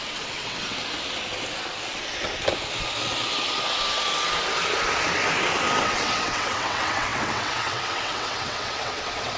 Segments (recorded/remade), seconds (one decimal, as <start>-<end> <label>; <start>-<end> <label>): 0.0-0.8 remade; 0.8-5.8 recorded; 5.8-9.4 remade